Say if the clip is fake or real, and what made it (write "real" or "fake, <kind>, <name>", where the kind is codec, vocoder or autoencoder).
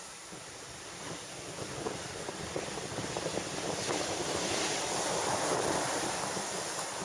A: fake, vocoder, BigVGAN v2